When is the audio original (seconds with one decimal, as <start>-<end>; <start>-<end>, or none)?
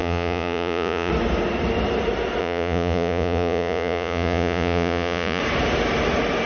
1.1-2.4; 5.4-6.5